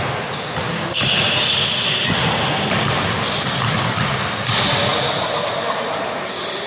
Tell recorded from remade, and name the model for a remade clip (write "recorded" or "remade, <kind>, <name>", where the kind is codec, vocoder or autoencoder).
recorded